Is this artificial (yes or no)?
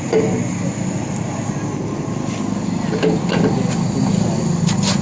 no